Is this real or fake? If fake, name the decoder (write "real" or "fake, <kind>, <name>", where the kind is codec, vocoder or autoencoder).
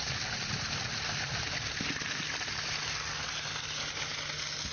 real